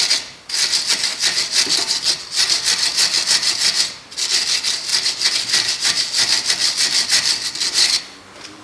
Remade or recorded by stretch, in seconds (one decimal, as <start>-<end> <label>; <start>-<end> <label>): 0.0-4.9 recorded; 4.9-8.0 remade; 8.0-8.6 recorded